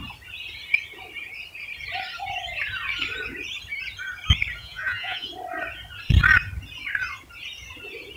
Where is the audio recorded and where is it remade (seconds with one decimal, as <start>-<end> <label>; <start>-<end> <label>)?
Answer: 0.0-4.6 recorded; 4.6-5.3 remade; 5.3-8.2 recorded